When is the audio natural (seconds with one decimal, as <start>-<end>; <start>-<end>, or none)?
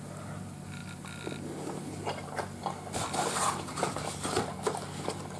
0.0-5.4